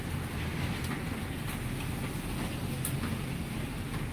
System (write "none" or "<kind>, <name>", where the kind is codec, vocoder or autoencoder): none